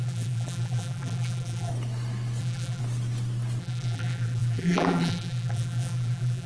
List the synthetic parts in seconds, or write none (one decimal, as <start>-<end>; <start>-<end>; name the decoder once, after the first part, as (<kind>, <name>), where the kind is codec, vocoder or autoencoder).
0.0-1.7 (vocoder, BigVGAN v2); 2.4-2.8; 3.6-6.5